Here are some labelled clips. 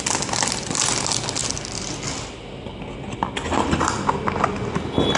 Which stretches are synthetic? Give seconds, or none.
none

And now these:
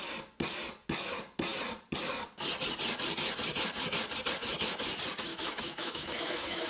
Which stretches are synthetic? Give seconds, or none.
5.3-6.7 (autoencoder, DAC-VAE)

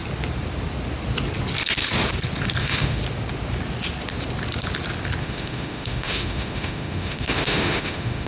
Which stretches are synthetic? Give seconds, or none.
2.6-3.0 (autoencoder, DAC-VAE); 5.2-8.3

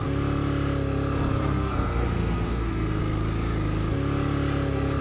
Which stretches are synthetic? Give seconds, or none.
1.3-3.0 (codec, SNAC)